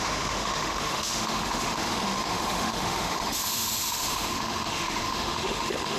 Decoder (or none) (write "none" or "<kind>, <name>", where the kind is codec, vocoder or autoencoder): autoencoder, DAC-VAE